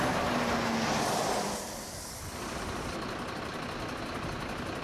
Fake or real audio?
real